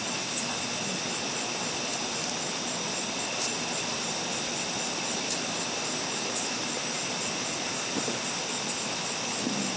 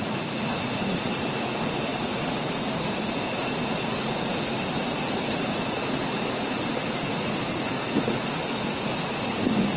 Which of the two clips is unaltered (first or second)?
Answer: first